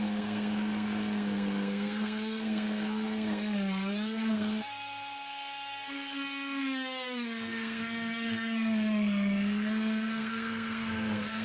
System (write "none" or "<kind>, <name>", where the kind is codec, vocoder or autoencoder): codec, SNAC